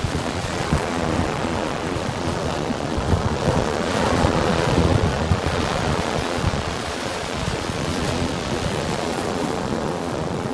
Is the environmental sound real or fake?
fake